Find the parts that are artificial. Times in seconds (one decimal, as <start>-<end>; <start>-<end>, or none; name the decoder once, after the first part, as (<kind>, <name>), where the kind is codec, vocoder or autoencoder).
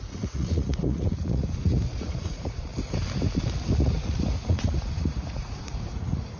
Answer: 0.0-2.7 (vocoder, Vocos); 3.8-6.4